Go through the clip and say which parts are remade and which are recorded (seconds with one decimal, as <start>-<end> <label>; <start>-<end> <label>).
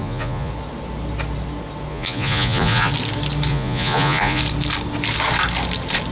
0.0-0.5 remade; 0.5-1.9 recorded; 1.9-2.9 remade; 2.9-3.5 recorded; 3.5-4.4 remade; 4.4-6.1 recorded